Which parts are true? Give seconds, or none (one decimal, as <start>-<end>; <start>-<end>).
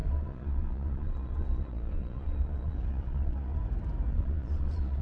3.6-4.1